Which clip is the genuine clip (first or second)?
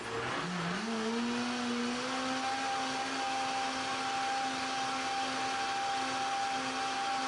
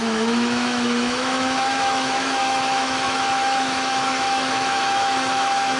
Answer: first